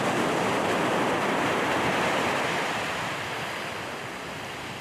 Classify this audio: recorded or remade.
recorded